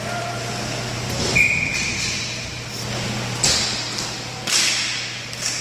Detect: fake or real real